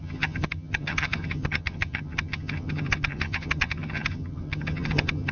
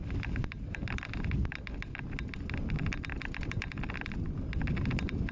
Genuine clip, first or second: second